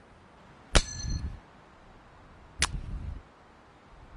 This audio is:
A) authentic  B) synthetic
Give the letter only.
A